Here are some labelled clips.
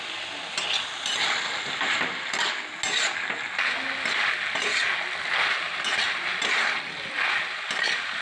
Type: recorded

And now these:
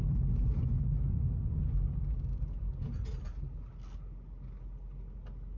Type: recorded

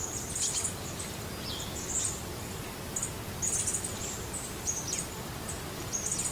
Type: recorded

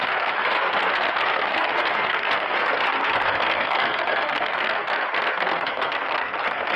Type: remade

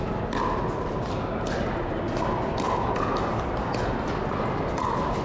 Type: recorded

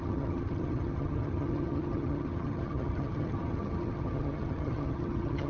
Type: remade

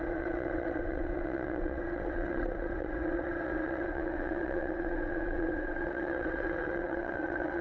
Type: remade